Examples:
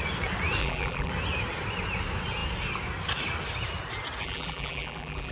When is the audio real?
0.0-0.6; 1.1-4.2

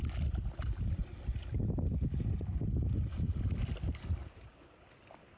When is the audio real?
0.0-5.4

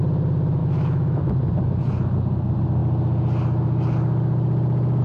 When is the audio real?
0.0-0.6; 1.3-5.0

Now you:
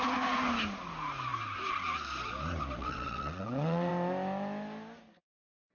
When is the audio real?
0.0-2.8; 3.9-5.7